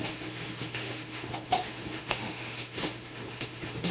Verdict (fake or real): fake